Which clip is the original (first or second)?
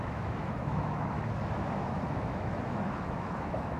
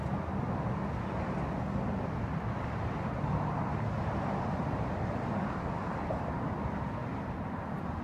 second